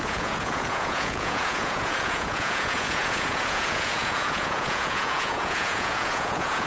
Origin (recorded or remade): remade